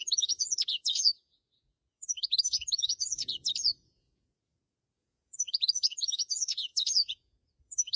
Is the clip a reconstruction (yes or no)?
yes